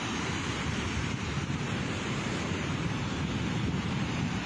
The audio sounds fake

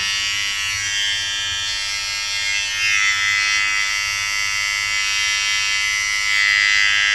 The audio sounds real